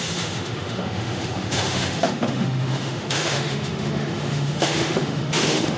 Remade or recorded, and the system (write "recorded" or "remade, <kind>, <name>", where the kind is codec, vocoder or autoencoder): remade, autoencoder, DAC-VAE